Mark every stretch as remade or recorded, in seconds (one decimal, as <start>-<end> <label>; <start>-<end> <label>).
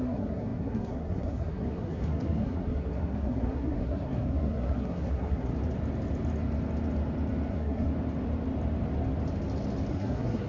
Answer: 0.0-5.5 remade; 5.5-7.5 recorded; 7.5-7.9 remade; 7.9-9.9 recorded; 9.9-10.5 remade